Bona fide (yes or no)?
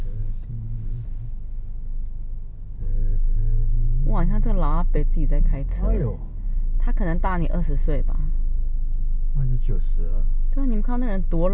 yes